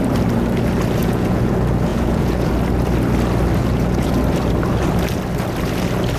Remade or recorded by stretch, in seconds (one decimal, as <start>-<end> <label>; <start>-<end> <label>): 0.0-1.0 recorded; 1.0-1.5 remade; 1.5-1.9 recorded; 1.9-2.5 remade; 2.5-3.6 recorded; 3.6-4.1 remade; 4.1-6.2 recorded